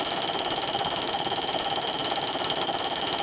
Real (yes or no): no